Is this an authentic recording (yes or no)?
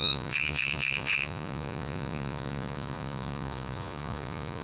no